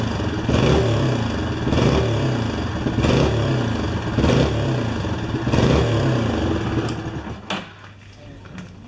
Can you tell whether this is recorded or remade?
recorded